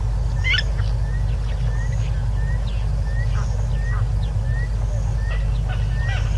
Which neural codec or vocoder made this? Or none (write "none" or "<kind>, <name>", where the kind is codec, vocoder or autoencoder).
none